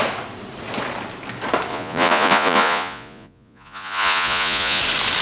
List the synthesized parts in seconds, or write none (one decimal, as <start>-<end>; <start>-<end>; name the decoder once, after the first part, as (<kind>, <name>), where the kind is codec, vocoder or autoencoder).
1.7-4.8 (vocoder, Vocos)